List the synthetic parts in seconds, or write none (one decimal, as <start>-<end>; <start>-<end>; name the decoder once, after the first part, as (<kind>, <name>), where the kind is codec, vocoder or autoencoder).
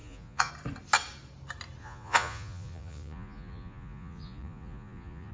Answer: 0.0-0.5 (vocoder, Vocos); 1.8-5.3